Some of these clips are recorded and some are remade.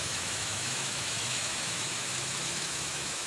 remade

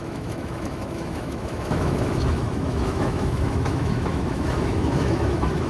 remade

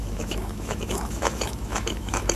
remade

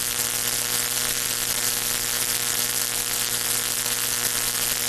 recorded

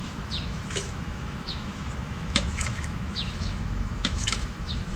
remade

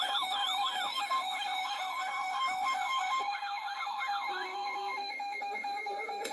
remade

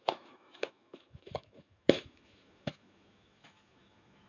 remade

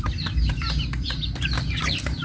recorded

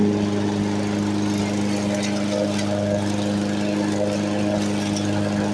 recorded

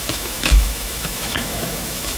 remade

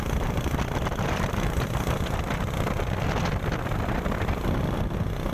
recorded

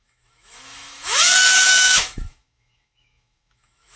remade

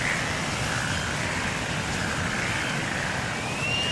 recorded